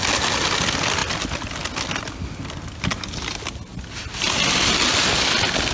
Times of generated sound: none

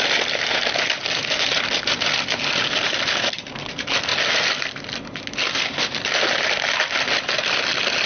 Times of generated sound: none

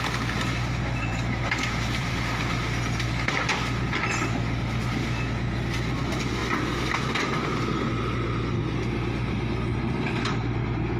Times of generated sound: 1.1-2.1 (vocoder, BigVGAN v2)